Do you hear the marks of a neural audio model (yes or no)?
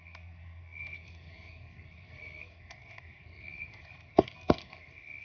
yes